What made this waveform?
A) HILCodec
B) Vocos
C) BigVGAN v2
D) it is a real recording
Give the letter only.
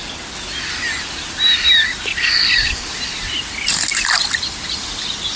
D